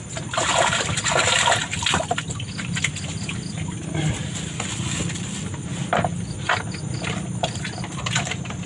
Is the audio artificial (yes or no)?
no